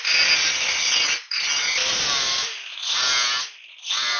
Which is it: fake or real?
real